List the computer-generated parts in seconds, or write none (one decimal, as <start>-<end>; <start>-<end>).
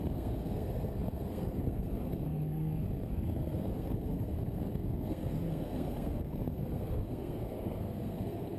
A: 0.0-8.6